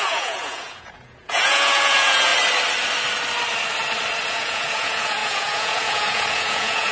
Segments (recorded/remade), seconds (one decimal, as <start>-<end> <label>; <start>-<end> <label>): 0.0-2.3 remade; 2.3-4.3 recorded; 4.3-6.9 remade